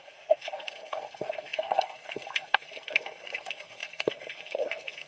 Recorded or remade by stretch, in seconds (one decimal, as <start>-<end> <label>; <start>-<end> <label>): 0.0-5.1 remade